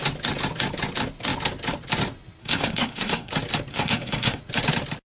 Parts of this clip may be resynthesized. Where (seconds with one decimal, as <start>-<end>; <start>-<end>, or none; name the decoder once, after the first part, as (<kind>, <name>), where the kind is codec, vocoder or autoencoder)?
2.4-3.3 (codec, SNAC); 3.7-4.4